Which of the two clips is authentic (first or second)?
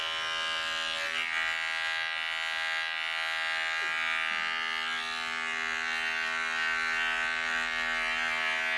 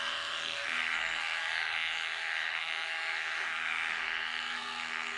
first